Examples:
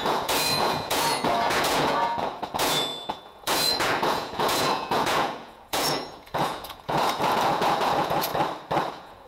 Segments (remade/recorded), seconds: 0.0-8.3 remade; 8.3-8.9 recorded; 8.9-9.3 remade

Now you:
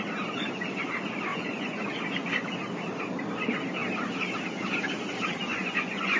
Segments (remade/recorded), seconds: 0.0-1.3 recorded; 1.3-1.8 remade; 1.8-5.5 recorded; 5.5-6.2 remade

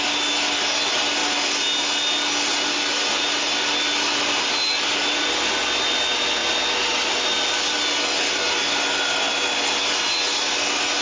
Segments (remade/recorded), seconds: 0.0-11.0 recorded

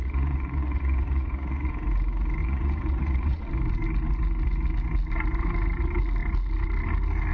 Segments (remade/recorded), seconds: 0.0-1.7 remade; 1.7-2.4 recorded; 2.4-3.5 remade; 3.5-7.3 recorded